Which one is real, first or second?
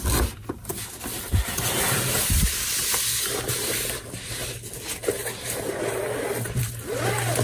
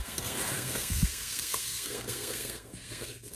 first